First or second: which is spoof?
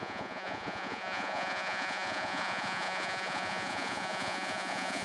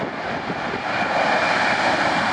first